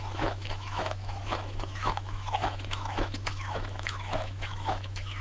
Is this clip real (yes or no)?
no